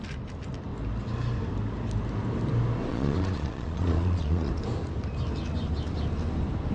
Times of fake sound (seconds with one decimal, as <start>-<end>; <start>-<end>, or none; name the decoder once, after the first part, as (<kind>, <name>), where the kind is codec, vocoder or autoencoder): 2.9-4.5 (vocoder, Vocos)